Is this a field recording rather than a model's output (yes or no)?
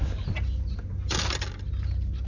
yes